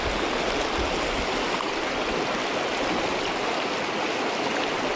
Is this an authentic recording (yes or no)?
yes